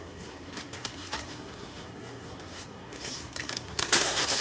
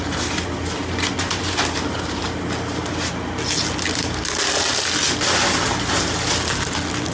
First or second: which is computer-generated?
first